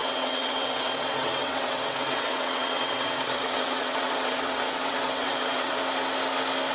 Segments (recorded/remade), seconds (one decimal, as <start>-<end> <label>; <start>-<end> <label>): 0.0-5.8 remade; 5.8-6.7 recorded